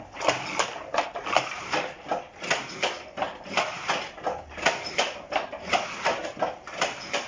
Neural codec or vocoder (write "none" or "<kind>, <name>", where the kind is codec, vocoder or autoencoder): none